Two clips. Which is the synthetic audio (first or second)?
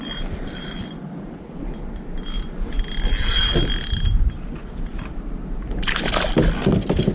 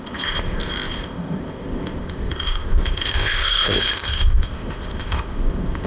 second